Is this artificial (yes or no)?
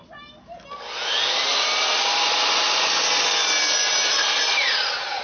no